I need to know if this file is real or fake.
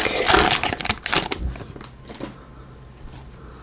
real